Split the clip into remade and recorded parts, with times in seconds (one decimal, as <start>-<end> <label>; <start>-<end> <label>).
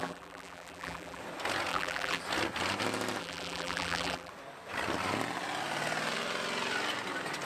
0.0-1.2 remade; 1.2-1.7 recorded; 1.7-2.2 remade; 2.2-3.2 recorded; 3.2-4.3 remade; 4.3-7.5 recorded